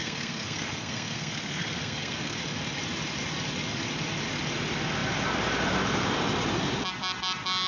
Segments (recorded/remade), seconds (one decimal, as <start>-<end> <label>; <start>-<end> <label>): 0.0-2.4 remade; 2.4-7.7 recorded

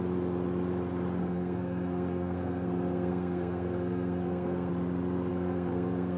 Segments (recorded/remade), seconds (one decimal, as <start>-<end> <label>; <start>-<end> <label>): 0.0-1.2 recorded; 1.2-4.7 remade; 4.7-5.3 recorded; 5.3-6.2 remade